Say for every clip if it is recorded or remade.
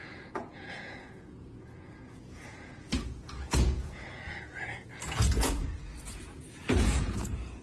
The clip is remade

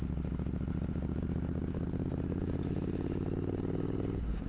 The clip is recorded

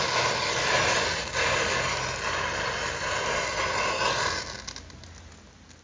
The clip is recorded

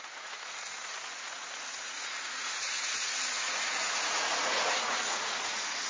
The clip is remade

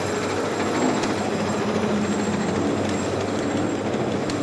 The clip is recorded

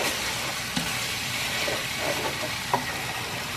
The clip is recorded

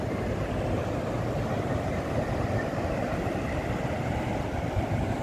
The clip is recorded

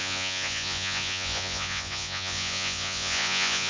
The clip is remade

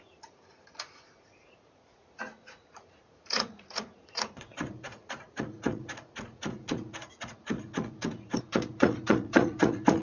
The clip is remade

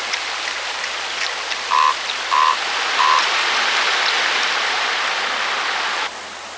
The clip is recorded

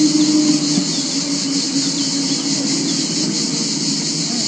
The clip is recorded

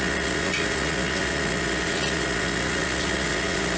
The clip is remade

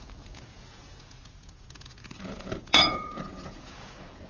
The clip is remade